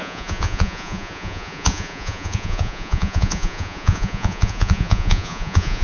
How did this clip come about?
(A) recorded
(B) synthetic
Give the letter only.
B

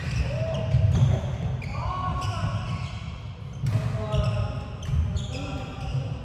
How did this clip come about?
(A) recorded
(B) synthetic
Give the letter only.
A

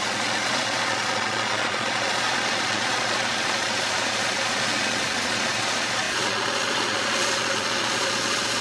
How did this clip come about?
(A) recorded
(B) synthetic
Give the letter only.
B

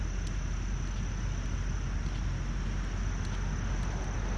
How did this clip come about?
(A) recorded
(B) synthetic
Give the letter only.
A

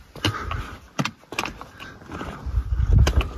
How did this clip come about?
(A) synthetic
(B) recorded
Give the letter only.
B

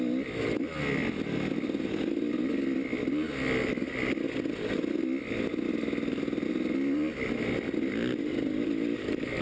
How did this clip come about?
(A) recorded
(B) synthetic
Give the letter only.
A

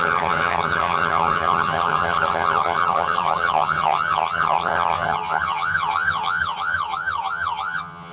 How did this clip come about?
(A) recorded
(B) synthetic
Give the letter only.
B